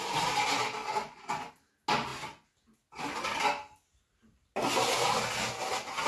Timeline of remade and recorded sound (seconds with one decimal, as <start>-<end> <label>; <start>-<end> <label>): 0.0-0.8 recorded; 0.8-1.5 remade; 1.5-6.1 recorded